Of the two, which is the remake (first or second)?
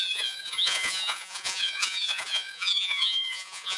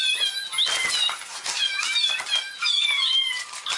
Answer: first